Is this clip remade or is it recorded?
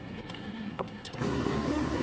remade